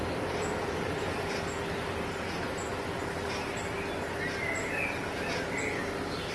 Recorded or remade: recorded